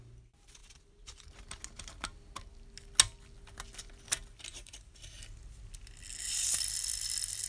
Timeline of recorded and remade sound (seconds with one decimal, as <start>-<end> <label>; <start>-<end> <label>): 0.0-0.6 recorded; 0.6-1.3 remade; 1.3-4.5 recorded; 4.5-5.2 remade; 5.2-7.5 recorded